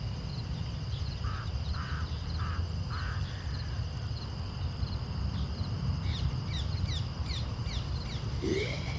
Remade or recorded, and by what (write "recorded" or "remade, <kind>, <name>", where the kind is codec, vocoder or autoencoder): remade, vocoder, BigVGAN v2